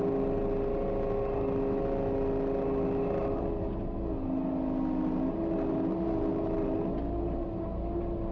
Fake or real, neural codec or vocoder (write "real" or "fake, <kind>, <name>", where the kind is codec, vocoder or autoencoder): real